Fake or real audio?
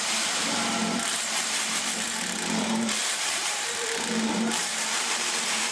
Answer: fake